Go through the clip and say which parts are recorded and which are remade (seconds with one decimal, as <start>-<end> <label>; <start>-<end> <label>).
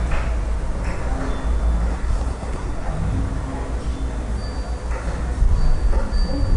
0.0-1.9 recorded; 1.9-2.9 remade; 2.9-6.6 recorded